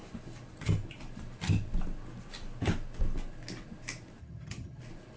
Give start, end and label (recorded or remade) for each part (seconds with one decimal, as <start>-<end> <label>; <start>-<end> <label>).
0.0-4.2 recorded; 4.2-4.8 remade; 4.8-5.2 recorded